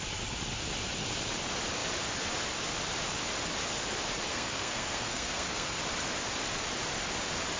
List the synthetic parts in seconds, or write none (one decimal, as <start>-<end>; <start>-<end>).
4.3-5.8